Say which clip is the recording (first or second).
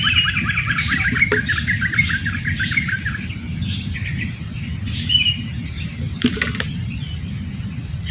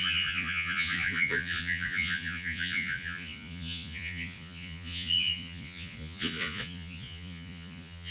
first